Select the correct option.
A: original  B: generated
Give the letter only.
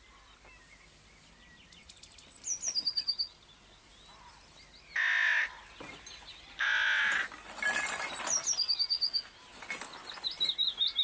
A